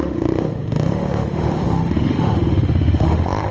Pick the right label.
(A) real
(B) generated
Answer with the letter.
B